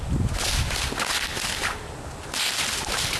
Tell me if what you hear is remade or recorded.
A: recorded